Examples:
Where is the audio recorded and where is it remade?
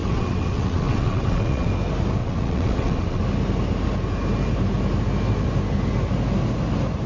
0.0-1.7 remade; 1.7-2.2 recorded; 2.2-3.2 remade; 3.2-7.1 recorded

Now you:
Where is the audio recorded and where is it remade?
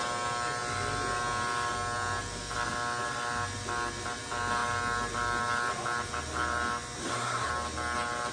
0.0-7.0 recorded; 7.0-7.5 remade; 7.5-8.3 recorded